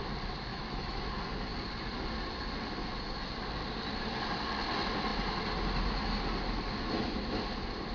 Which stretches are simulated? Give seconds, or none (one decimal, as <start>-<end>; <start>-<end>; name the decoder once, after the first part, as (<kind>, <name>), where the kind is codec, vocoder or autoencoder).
0.5-1.1 (autoencoder, DAC-VAE)